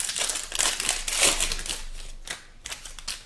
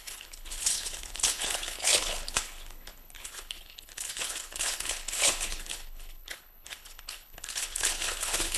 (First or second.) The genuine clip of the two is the first